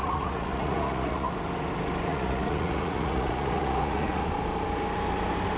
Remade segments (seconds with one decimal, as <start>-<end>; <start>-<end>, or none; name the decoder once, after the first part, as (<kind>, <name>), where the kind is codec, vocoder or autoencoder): 0.0-1.3 (vocoder, Vocos); 2.1-4.3